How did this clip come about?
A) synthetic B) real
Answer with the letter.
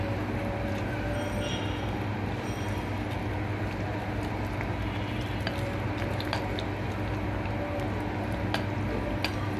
B